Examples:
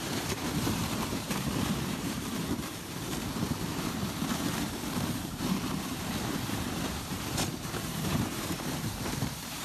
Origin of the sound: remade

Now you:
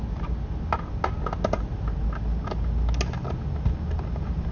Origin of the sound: recorded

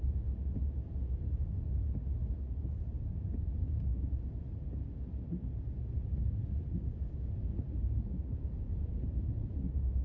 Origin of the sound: recorded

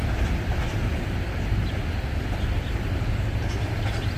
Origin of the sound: recorded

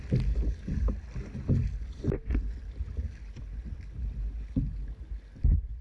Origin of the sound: recorded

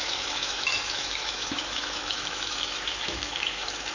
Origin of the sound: remade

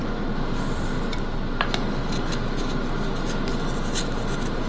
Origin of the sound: recorded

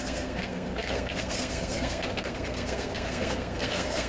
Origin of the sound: remade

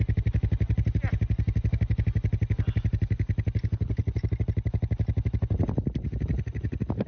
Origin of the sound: recorded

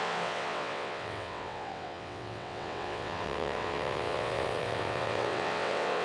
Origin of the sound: remade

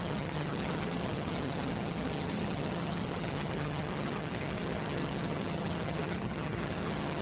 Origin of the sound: remade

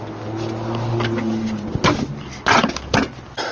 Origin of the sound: recorded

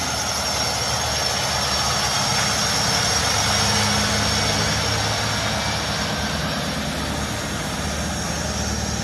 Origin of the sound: recorded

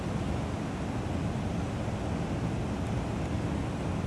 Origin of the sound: recorded